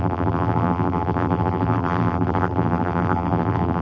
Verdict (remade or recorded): remade